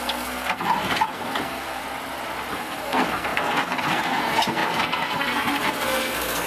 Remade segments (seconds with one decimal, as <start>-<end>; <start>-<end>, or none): 0.0-1.8; 2.5-6.5